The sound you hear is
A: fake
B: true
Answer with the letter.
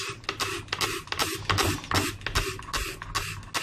B